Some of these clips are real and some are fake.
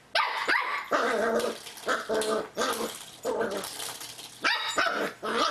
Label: real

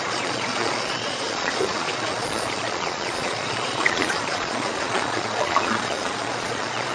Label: fake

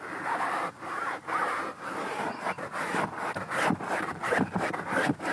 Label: real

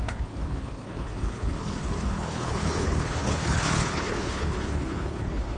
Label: fake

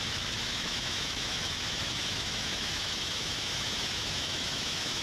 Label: fake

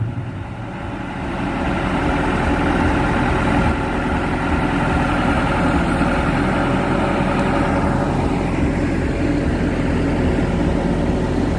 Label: real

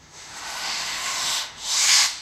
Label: fake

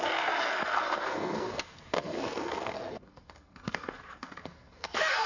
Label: fake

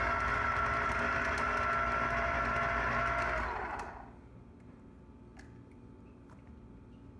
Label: real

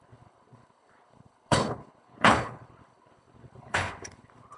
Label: fake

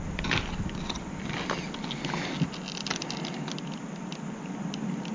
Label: real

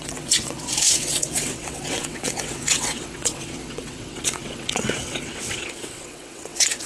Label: fake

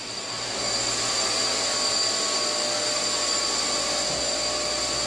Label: real